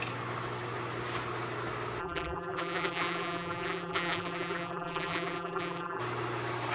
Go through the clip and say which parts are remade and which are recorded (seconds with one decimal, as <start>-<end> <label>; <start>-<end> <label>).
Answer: 0.0-2.0 recorded; 2.0-6.0 remade; 6.0-6.7 recorded